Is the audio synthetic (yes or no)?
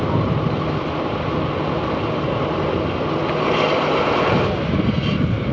no